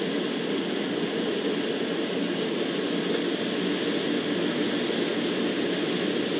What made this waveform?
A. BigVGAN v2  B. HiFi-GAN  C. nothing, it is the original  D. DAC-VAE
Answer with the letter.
C